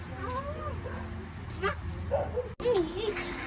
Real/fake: real